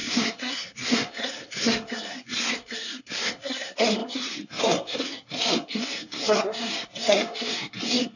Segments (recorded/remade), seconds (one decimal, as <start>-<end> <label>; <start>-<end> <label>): 0.0-8.2 remade